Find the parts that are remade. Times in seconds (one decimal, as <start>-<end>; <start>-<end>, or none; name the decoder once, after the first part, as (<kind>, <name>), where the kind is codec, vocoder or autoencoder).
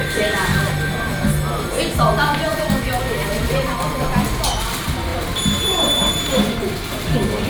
0.5-1.3 (vocoder, BigVGAN v2); 2.5-4.5; 5.1-6.7